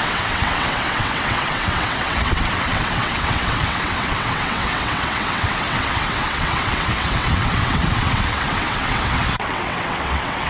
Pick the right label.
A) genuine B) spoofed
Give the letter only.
B